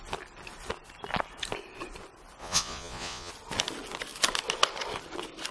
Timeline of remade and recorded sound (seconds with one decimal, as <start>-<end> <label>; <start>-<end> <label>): 0.0-2.4 recorded; 2.4-3.3 remade; 3.3-5.5 recorded